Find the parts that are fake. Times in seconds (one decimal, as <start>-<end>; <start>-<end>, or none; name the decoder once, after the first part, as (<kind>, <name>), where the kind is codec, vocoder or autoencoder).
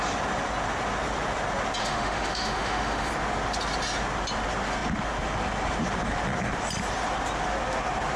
1.8-3.1 (autoencoder, DAC-VAE)